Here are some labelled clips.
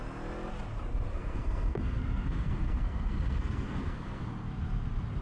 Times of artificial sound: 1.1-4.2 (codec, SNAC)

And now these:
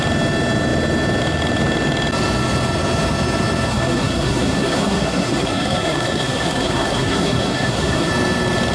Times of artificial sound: 3.7-8.1 (codec, SNAC)

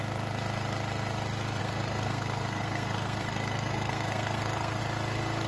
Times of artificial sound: 1.6-4.8 (codec, SNAC)

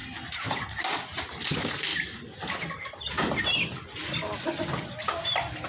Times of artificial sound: none